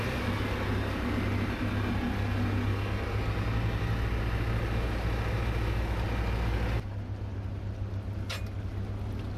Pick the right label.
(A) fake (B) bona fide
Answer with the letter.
B